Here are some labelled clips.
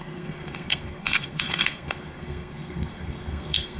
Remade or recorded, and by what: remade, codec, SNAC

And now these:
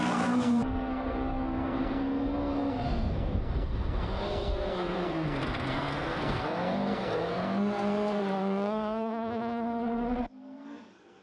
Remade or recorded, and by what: remade, codec, SNAC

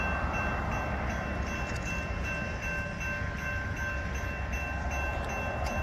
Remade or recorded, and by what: recorded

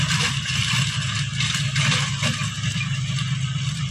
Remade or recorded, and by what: recorded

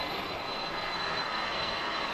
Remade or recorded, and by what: remade, codec, SNAC